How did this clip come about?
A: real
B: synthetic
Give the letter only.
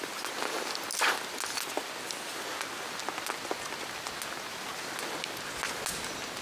A